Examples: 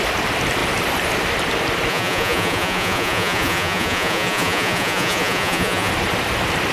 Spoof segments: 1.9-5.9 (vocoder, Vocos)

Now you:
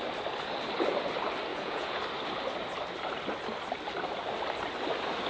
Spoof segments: 1.5-2.0 (vocoder, Vocos)

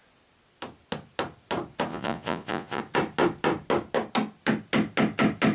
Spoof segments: 1.9-2.8 (vocoder, Vocos)

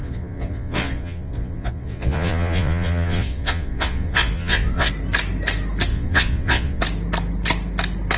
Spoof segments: 0.0-4.9 (vocoder, Vocos); 5.9-6.8